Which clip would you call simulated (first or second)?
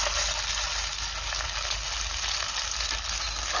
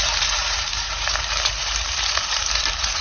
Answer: second